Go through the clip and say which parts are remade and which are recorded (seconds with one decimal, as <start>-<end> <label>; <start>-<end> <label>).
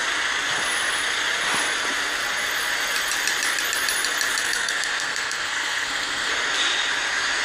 0.0-4.4 recorded; 4.4-6.3 remade; 6.3-7.4 recorded